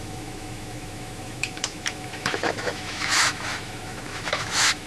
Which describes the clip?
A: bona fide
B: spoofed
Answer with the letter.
B